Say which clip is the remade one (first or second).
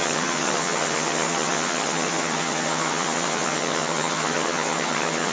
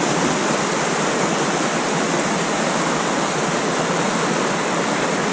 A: first